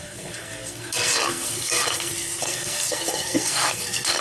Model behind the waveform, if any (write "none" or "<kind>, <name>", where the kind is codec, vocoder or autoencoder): codec, SNAC